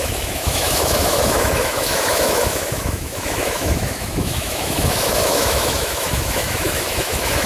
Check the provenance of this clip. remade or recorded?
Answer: remade